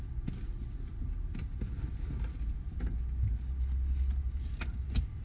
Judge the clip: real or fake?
real